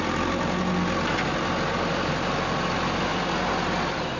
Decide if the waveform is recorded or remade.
recorded